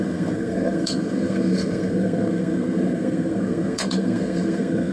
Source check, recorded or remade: remade